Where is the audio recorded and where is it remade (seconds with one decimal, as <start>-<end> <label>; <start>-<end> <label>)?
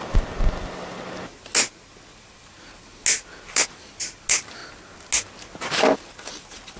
0.0-6.8 recorded